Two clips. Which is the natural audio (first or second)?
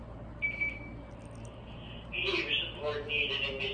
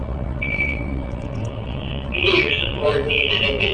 first